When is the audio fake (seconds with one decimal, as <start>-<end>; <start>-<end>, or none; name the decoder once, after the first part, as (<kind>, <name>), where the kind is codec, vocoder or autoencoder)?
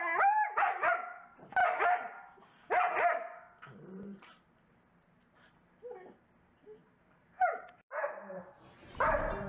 0.0-9.5 (vocoder, BigVGAN v2)